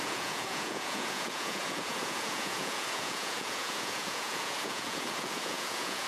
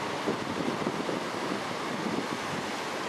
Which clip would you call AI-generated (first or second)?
first